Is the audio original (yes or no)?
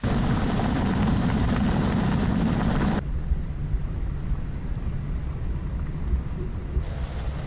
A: yes